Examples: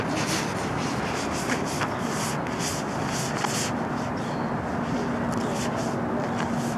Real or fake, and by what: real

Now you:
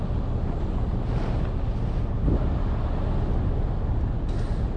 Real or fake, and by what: real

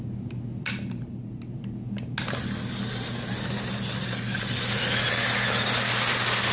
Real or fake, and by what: real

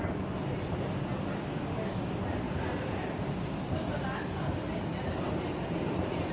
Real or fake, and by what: real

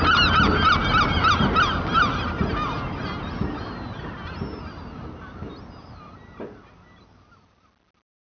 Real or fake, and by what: real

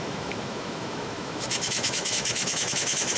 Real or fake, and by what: fake, autoencoder, DAC-VAE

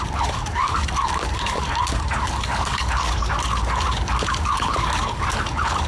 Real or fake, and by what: fake, codec, DAC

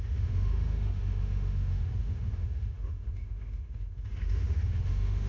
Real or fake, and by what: fake, autoencoder, DAC-VAE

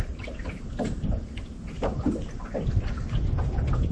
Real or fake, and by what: real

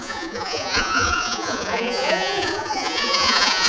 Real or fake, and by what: fake, vocoder, Vocos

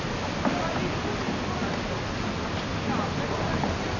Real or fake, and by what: real